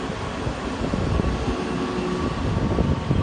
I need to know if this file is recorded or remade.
recorded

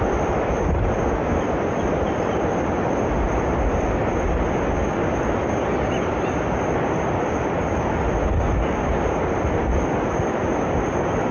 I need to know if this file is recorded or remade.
recorded